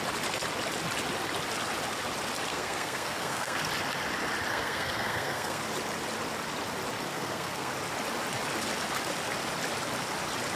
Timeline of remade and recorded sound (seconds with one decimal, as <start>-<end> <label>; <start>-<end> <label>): 0.0-2.5 recorded; 2.5-3.6 remade; 3.6-4.5 recorded; 4.5-5.6 remade; 5.6-7.0 recorded; 7.0-7.7 remade; 7.7-10.6 recorded